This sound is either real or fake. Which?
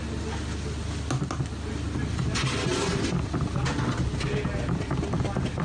real